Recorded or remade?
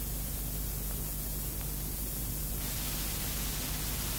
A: recorded